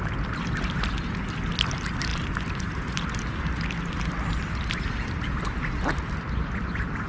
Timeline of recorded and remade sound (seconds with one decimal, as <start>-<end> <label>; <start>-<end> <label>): 0.0-2.1 recorded; 2.1-3.2 remade; 3.2-7.1 recorded